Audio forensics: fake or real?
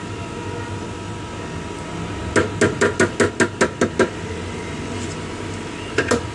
real